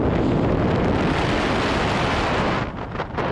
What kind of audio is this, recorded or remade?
recorded